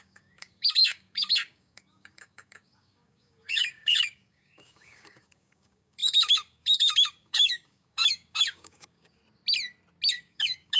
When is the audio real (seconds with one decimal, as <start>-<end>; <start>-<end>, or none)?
9.2-10.1